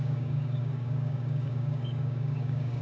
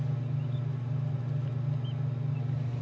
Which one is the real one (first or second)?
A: second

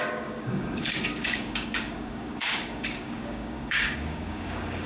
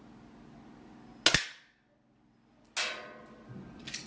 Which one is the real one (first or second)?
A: second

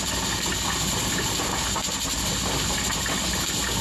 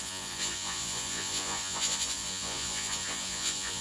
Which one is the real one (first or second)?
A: first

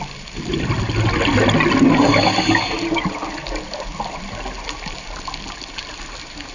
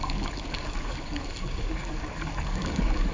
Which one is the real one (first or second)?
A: first